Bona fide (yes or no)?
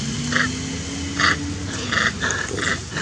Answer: yes